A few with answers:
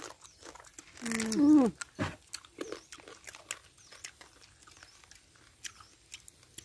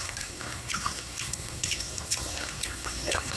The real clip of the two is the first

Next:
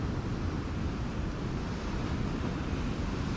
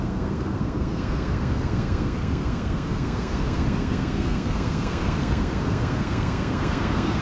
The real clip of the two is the first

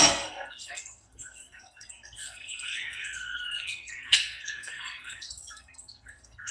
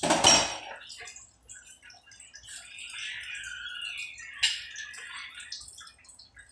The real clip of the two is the second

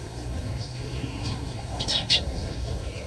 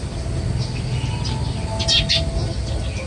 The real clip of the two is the second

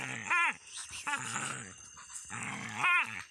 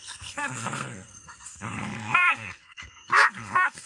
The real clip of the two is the first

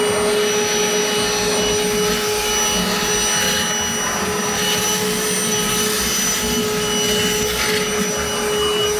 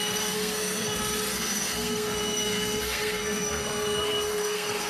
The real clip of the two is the first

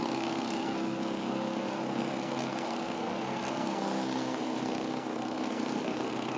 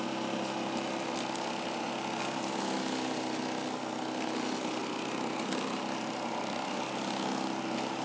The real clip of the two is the second